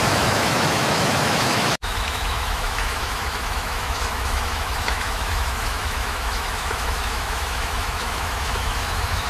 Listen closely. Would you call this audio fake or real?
fake